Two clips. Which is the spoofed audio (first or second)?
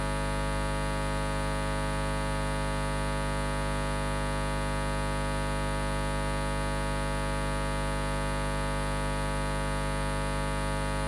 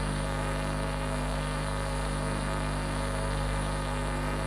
second